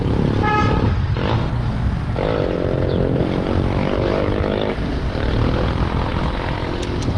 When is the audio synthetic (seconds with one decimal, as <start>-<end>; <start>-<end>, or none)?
none